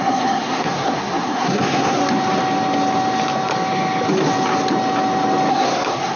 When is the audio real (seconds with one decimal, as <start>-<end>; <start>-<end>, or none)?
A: 2.0-5.5